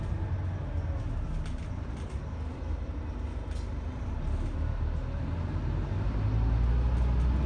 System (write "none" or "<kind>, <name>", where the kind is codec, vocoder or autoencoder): none